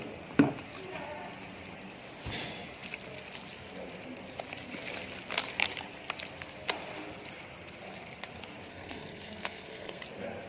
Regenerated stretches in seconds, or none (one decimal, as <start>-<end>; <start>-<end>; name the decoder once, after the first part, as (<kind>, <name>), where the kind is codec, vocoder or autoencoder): 8.7-10.0 (codec, SNAC)